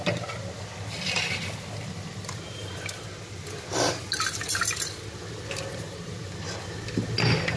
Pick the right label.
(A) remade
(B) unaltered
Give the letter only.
B